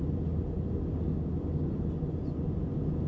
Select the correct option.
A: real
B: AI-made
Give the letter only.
A